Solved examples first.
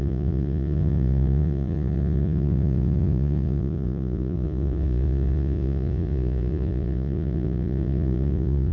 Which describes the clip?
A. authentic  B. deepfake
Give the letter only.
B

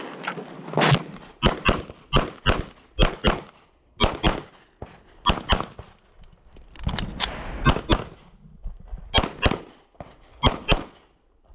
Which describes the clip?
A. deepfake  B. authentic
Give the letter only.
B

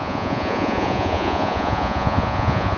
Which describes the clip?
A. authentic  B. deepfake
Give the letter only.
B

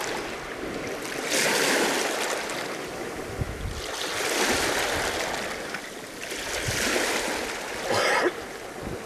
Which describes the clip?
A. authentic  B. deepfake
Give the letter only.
A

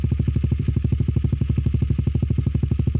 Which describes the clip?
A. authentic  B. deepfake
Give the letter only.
A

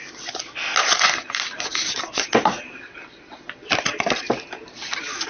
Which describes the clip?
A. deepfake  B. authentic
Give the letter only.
B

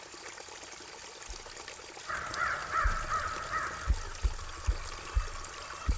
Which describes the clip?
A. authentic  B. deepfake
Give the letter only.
A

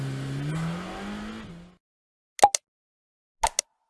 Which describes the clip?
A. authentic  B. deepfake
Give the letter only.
A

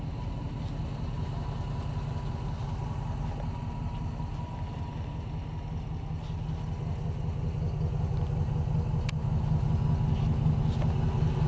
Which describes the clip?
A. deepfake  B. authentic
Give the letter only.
B